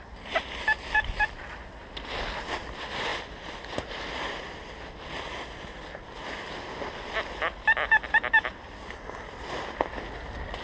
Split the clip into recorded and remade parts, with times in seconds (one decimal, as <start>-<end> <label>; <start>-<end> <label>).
0.0-10.6 recorded